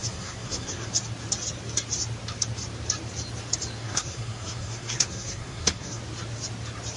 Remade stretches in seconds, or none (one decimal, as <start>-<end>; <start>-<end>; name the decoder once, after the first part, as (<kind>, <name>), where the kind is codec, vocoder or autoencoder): 0.0-0.9 (codec, SNAC); 3.8-6.0